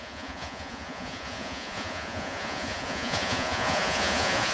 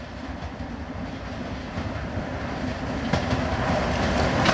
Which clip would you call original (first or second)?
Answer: second